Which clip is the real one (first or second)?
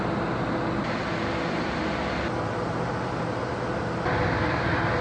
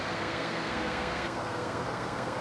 first